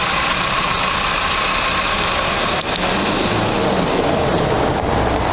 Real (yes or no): yes